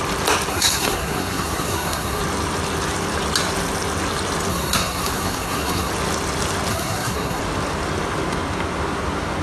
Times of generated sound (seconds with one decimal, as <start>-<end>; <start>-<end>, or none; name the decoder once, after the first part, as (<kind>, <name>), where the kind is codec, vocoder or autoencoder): 0.5-2.2 (codec, SNAC); 4.5-5.9; 6.7-7.4